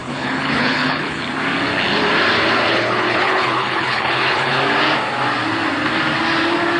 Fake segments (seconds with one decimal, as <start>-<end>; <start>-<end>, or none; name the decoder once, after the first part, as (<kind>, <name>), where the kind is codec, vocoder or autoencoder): 0.0-1.2 (codec, HILCodec); 2.7-4.6